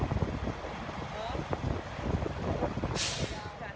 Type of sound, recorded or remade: recorded